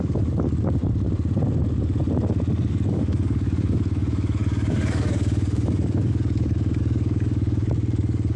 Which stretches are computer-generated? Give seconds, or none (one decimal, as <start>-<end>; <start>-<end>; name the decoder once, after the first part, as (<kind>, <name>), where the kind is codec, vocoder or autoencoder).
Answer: 0.0-0.8 (codec, DAC); 2.7-8.4